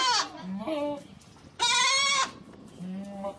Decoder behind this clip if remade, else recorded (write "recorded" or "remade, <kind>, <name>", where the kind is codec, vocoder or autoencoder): recorded